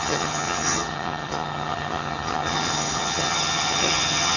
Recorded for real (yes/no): no